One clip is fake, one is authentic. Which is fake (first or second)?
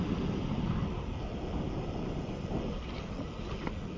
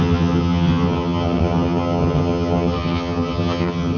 second